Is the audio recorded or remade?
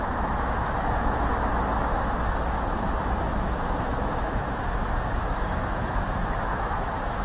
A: remade